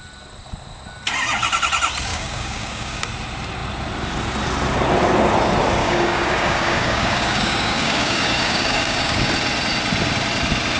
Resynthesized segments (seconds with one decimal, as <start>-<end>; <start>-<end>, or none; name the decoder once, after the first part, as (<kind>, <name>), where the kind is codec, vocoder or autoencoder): 2.1-3.0 (codec, DAC); 5.8-9.3